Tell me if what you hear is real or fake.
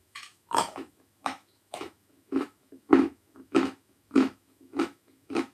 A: fake